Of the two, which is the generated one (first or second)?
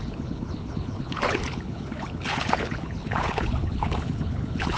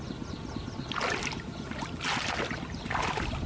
first